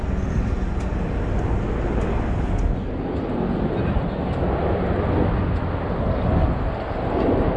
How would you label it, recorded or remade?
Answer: recorded